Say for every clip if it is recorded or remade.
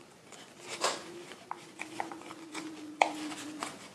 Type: remade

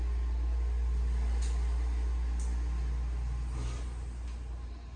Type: recorded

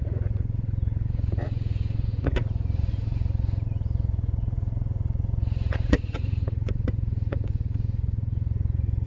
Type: remade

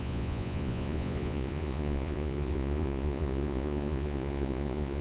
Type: remade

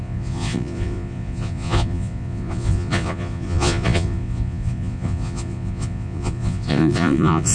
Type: remade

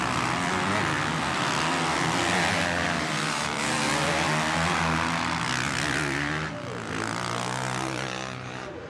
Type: recorded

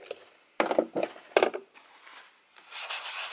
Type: recorded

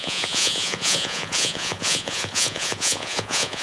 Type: remade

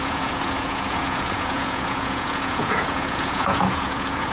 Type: remade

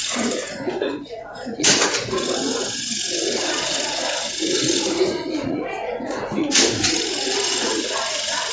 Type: remade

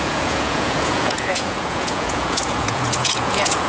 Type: remade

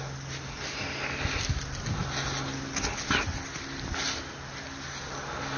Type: recorded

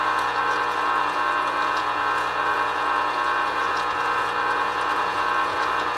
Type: remade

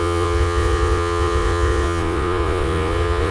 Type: remade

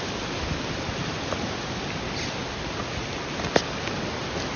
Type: recorded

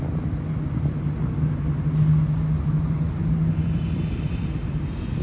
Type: recorded